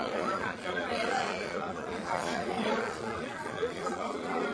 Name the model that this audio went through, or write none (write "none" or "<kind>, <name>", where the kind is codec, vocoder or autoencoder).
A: vocoder, Vocos